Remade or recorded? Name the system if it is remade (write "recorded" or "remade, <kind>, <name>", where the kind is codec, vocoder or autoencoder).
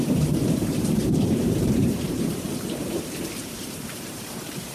remade, vocoder, BigVGAN v2